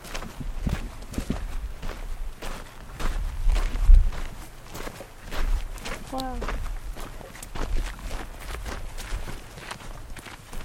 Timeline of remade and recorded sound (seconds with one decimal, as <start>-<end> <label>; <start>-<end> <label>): 0.0-9.1 recorded; 9.1-9.7 remade; 9.7-10.6 recorded